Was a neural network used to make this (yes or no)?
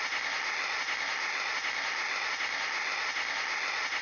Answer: no